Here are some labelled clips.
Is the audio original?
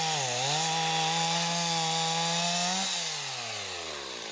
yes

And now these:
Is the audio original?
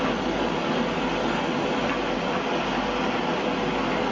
yes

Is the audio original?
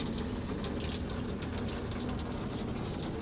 yes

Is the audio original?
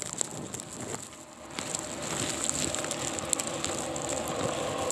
yes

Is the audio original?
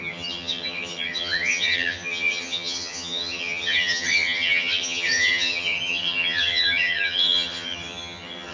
no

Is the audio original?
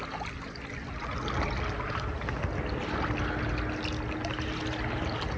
yes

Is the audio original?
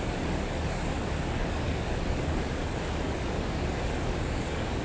no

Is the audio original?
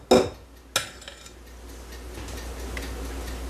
yes